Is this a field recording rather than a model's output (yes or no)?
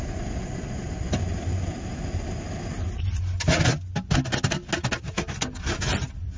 yes